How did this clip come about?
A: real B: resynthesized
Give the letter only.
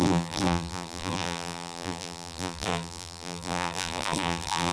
B